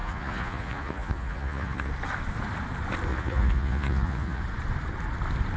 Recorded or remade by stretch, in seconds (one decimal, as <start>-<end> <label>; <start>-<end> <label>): 0.0-1.9 remade; 1.9-3.1 recorded; 3.1-4.4 remade; 4.4-5.6 recorded